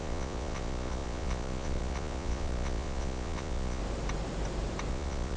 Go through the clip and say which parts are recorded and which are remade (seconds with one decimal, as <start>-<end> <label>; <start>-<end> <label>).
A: 0.0-3.8 remade; 3.8-4.9 recorded; 4.9-5.4 remade